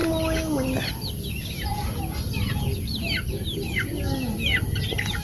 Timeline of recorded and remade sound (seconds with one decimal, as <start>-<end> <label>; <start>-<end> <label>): 0.0-5.2 recorded